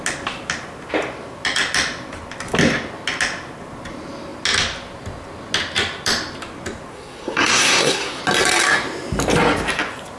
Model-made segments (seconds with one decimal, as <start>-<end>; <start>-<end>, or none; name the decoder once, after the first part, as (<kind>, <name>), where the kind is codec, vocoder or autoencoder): 6.9-8.2 (codec, SNAC)